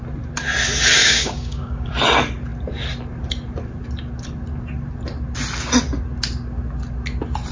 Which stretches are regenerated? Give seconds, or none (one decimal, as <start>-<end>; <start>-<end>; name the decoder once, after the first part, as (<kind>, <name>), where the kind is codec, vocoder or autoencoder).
1.0-1.9 (codec, DAC)